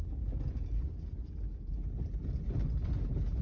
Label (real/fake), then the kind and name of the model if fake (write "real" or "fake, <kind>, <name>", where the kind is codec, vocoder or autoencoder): real